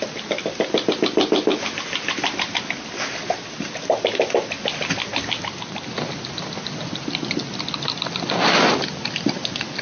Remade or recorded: recorded